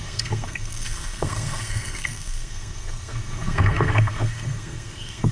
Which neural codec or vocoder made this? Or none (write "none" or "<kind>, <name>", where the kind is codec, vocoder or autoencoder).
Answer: codec, SNAC